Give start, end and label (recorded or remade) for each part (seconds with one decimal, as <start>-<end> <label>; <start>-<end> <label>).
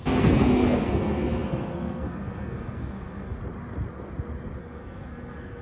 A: 0.0-3.4 remade; 3.4-4.6 recorded; 4.6-5.6 remade